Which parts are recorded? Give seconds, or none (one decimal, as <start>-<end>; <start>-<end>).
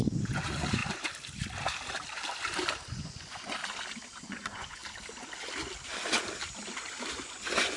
0.8-2.9; 3.6-4.3; 4.8-7.1